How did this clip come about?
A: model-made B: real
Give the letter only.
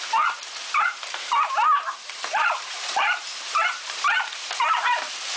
A